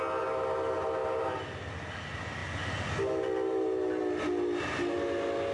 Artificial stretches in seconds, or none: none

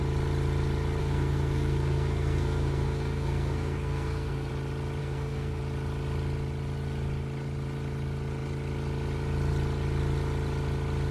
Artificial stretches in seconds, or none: 1.0-4.5; 5.0-5.6

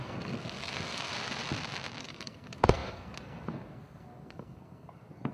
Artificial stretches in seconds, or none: 0.0-1.1; 2.0-5.3

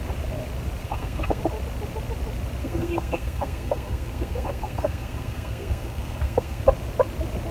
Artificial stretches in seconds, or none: 0.8-1.4; 2.6-6.6

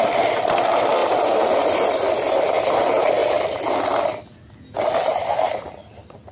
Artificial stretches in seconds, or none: none